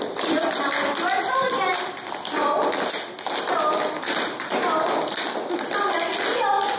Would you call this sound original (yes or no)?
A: yes